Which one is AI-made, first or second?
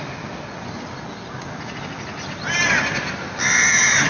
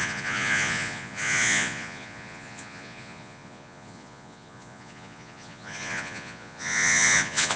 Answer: second